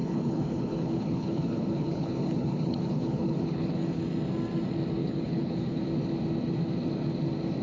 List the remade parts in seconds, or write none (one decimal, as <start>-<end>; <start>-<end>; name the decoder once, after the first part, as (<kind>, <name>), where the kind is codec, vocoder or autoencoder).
0.0-4.0 (codec, HILCodec); 5.0-5.8